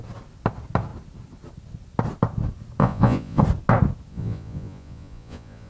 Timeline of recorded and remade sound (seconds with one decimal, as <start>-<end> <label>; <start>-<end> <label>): 0.0-2.8 recorded; 2.8-3.4 remade; 3.4-4.1 recorded; 4.1-5.7 remade

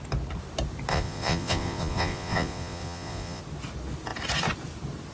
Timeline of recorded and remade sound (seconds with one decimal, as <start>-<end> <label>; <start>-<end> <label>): 0.0-0.9 recorded; 0.9-3.4 remade; 3.4-5.1 recorded

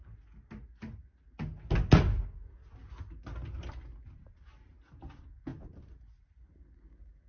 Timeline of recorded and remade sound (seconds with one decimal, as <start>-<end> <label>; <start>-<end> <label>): 0.0-7.3 recorded

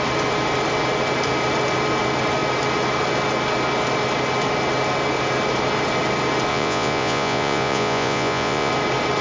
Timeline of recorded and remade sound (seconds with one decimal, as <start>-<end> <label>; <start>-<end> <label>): 0.0-6.5 recorded; 6.5-8.7 remade; 8.7-9.2 recorded

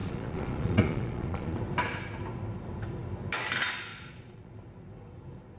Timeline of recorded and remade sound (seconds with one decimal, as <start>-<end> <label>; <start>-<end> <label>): 0.0-1.6 remade; 1.6-3.9 recorded; 3.9-4.5 remade; 4.5-5.6 recorded

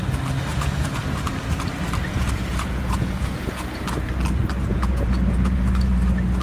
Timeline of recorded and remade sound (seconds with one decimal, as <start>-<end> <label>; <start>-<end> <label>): 0.0-0.5 recorded; 0.5-1.0 remade; 1.0-2.1 recorded; 2.1-3.8 remade; 3.8-4.7 recorded; 4.7-5.7 remade; 5.7-6.4 recorded

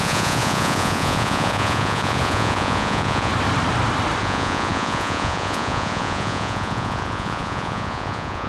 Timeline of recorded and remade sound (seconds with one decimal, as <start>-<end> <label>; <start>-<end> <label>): 0.0-3.3 remade; 3.3-4.2 recorded; 4.2-8.5 remade